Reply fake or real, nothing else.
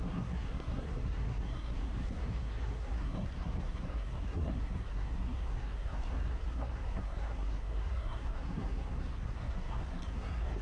fake